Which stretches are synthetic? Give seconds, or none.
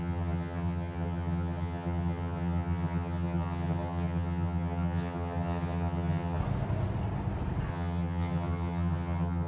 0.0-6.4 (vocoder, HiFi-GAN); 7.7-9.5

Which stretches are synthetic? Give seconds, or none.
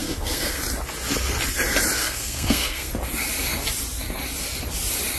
0.0-0.6 (codec, SNAC); 2.0-2.9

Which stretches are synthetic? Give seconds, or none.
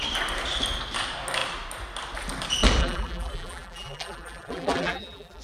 2.8-5.4 (vocoder, BigVGAN v2)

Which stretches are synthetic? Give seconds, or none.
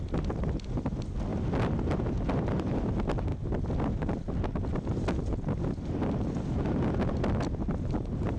none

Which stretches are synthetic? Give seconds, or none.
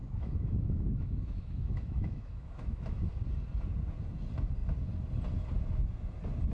0.0-3.1 (autoencoder, DAC-VAE)